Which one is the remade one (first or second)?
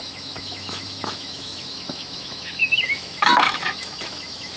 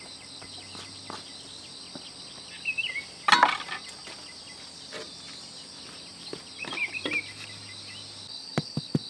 first